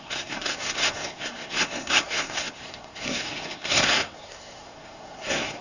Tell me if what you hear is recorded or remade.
remade